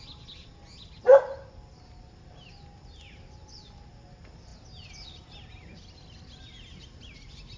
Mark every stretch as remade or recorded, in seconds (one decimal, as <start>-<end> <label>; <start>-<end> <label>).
0.0-7.6 recorded